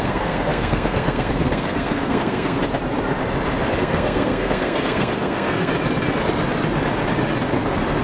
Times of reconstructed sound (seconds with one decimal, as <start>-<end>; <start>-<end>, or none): 0.0-2.6; 3.8-5.7